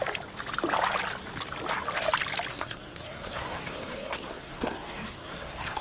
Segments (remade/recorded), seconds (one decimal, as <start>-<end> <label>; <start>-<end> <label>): 0.0-2.5 recorded; 2.5-5.8 remade